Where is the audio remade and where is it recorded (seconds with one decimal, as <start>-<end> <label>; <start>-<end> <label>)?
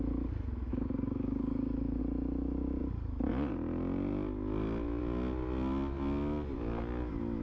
0.0-0.7 recorded; 0.7-2.0 remade; 2.0-7.4 recorded